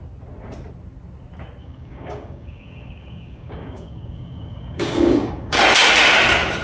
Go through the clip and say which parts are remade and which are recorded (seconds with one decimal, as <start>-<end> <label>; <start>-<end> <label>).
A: 0.0-1.6 recorded; 1.6-5.6 remade; 5.6-6.6 recorded

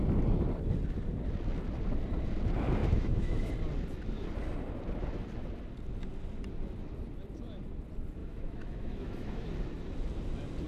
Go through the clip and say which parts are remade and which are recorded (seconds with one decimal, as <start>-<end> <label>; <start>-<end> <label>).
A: 0.0-2.8 recorded; 2.8-3.5 remade; 3.5-8.2 recorded; 8.2-9.5 remade; 9.5-10.7 recorded